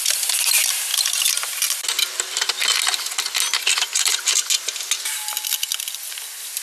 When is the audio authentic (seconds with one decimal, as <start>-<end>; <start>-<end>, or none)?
0.0-6.6